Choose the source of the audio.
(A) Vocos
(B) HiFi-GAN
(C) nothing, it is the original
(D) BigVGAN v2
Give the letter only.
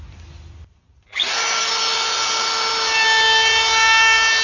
C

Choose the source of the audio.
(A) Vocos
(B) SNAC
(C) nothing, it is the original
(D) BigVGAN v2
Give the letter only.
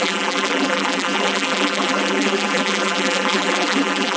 D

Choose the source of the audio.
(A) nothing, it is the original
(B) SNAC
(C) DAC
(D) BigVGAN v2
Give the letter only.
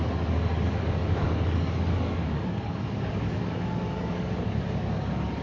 C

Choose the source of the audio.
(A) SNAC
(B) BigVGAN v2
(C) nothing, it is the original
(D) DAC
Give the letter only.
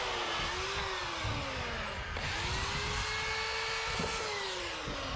C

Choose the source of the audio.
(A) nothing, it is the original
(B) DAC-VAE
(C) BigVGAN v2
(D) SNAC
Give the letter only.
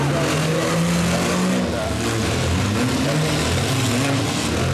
A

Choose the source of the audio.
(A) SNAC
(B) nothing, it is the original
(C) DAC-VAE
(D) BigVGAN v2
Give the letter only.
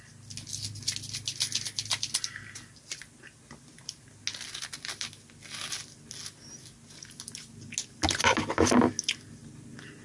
B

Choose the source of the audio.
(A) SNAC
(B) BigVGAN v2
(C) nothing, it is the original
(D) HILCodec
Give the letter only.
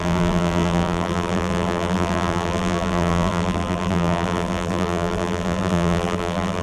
B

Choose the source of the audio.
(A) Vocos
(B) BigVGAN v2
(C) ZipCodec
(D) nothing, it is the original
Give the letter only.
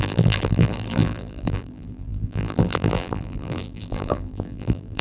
B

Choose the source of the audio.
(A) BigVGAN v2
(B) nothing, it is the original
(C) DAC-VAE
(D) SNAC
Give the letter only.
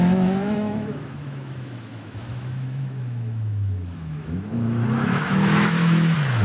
C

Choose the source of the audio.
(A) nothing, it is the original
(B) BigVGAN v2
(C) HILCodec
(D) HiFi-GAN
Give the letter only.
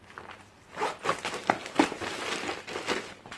A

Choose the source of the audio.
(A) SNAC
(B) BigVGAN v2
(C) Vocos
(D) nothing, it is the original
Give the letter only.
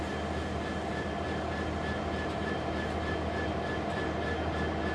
D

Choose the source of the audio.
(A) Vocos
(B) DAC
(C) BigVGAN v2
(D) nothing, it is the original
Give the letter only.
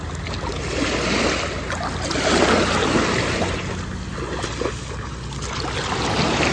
D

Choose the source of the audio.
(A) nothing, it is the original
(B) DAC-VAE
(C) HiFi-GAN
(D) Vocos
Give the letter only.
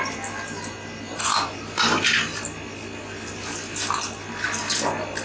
A